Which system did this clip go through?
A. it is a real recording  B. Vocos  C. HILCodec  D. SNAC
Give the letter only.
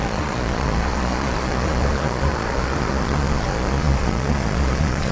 B